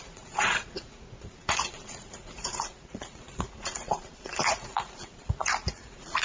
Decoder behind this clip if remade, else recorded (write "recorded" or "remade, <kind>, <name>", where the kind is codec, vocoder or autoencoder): remade, vocoder, Vocos